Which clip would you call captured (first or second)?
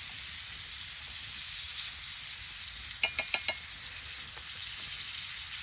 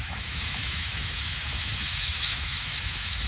first